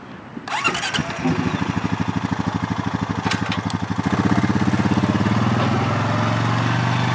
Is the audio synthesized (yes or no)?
no